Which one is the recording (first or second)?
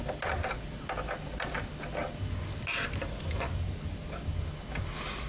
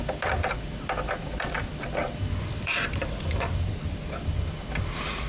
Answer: first